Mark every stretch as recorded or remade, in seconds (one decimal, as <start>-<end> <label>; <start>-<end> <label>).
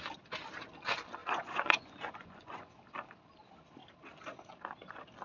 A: 0.0-1.2 recorded; 1.2-2.7 remade; 2.7-5.2 recorded